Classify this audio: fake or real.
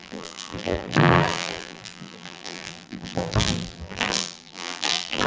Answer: fake